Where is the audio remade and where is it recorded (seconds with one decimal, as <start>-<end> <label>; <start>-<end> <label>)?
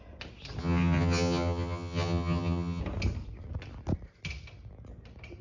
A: 0.0-0.6 recorded; 0.6-2.8 remade; 2.8-5.4 recorded